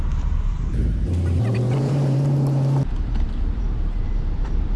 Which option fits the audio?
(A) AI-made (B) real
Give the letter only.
A